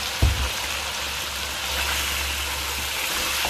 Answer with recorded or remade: recorded